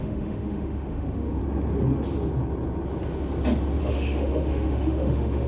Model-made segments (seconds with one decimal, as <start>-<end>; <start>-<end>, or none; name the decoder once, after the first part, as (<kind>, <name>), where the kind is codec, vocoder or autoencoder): 0.0-1.4 (autoencoder, DAC-VAE); 3.8-5.5